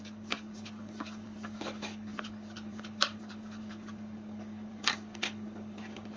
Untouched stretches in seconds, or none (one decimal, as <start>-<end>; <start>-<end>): none